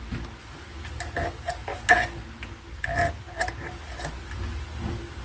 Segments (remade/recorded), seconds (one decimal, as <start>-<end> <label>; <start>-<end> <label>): 0.0-5.2 recorded